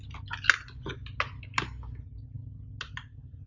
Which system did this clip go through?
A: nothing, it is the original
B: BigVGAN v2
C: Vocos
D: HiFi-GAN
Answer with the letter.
A